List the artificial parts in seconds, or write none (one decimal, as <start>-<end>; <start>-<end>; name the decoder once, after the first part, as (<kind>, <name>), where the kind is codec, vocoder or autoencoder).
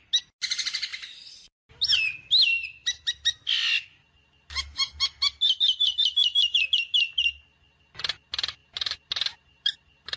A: 2.5-3.1 (vocoder, BigVGAN v2); 8.6-10.2